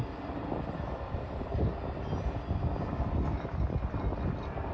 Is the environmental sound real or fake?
real